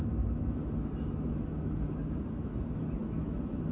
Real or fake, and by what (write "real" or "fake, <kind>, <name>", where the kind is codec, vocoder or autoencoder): fake, autoencoder, DAC-VAE